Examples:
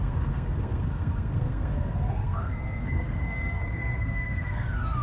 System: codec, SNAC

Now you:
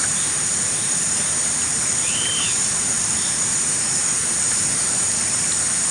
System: vocoder, BigVGAN v2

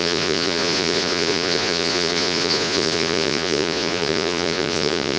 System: vocoder, Vocos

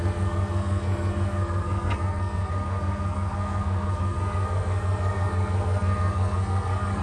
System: codec, SNAC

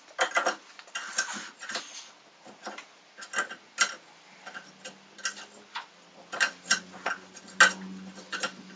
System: none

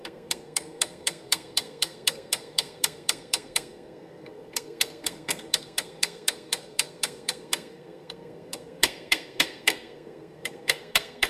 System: codec, SNAC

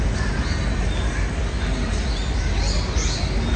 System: none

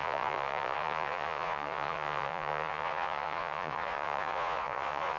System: vocoder, Vocos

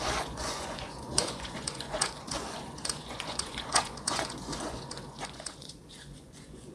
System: vocoder, Vocos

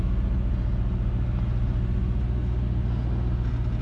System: none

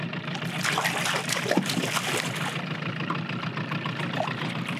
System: none